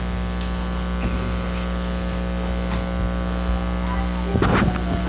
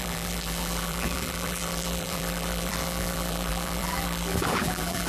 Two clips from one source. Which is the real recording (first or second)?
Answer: first